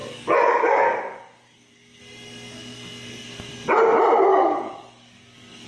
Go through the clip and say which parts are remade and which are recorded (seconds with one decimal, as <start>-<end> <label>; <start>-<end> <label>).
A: 0.0-2.0 remade; 2.0-4.3 recorded; 4.3-5.7 remade